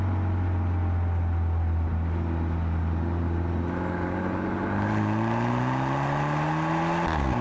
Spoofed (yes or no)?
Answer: no